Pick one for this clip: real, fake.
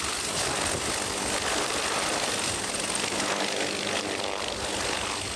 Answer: real